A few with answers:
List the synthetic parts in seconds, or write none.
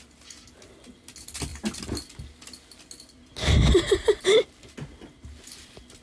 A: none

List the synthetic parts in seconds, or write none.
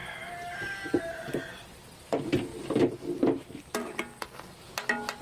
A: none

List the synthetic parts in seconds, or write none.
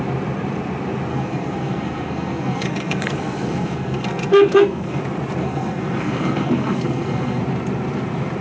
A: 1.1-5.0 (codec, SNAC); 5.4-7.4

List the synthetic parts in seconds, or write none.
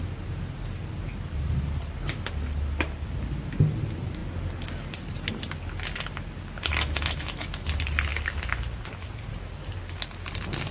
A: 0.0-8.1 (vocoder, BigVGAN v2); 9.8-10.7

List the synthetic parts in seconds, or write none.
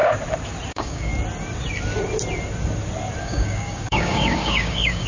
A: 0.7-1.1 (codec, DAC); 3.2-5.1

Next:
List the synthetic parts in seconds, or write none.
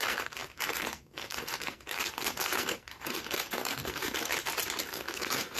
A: 0.0-4.3 (codec, SNAC); 4.8-5.6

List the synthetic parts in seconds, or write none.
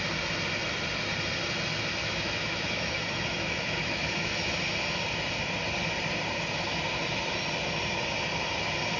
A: 2.0-4.6 (autoencoder, DAC-VAE)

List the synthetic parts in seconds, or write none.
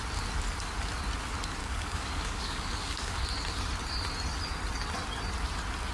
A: 1.6-3.2 (codec, DAC)